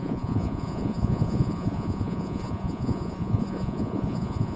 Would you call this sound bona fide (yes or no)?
no